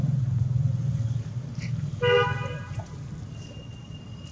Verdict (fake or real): real